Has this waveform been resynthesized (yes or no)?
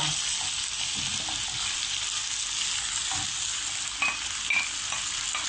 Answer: no